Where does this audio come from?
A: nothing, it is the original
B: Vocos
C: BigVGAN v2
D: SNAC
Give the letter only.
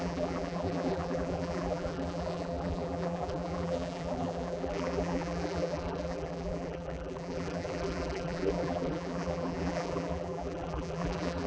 C